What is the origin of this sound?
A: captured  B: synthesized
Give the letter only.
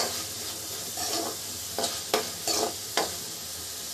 A